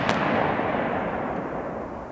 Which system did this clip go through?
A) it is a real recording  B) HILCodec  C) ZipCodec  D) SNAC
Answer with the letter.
A